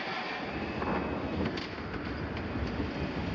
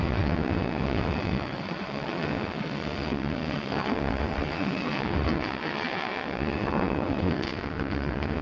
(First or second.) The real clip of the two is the first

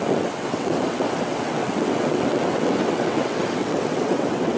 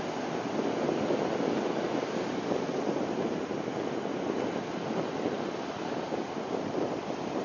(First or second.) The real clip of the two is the second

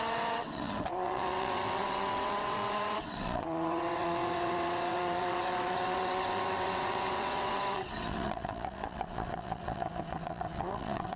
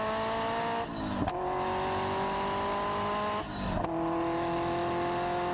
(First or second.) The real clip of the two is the second